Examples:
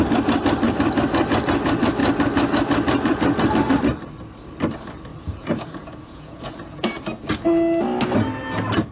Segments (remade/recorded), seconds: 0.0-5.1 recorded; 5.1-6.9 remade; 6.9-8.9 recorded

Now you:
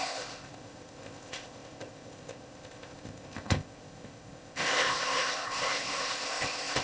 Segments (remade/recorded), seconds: 0.0-6.8 remade